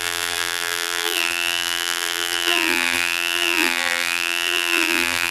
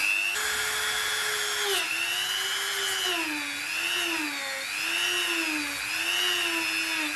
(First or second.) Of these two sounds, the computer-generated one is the first